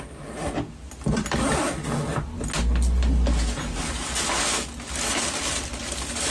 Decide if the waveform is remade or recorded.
recorded